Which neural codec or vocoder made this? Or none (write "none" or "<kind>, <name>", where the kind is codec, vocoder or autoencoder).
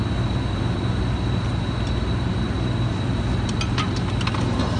none